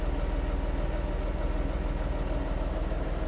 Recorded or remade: recorded